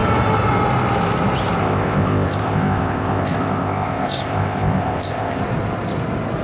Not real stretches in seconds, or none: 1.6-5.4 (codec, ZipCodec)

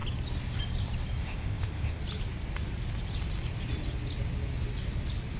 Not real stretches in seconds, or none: 1.2-2.0 (codec, ZipCodec)

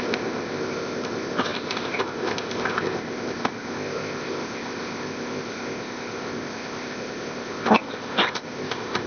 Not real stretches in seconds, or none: 0.0-9.1 (codec, ZipCodec)

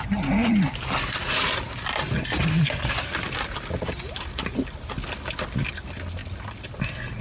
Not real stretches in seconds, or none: none

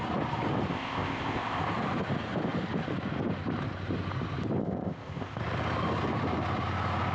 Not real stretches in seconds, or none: 0.7-1.6 (codec, ZipCodec); 4.6-5.4

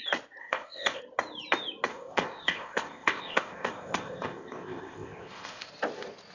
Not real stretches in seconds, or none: 0.4-1.0 (codec, ZipCodec); 1.9-5.7